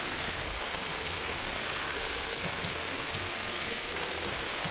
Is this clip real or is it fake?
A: fake